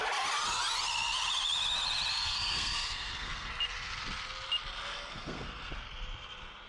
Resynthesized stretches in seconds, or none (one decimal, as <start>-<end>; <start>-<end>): 2.1-3.5; 5.1-5.7